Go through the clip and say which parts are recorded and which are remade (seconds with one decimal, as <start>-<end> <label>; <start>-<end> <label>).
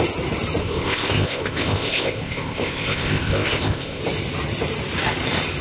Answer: 0.0-0.6 recorded; 0.6-4.0 remade; 4.0-5.6 recorded